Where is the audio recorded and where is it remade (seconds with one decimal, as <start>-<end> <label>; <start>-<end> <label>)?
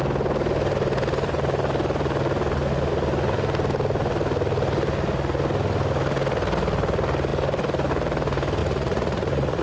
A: 0.0-8.6 recorded; 8.6-9.6 remade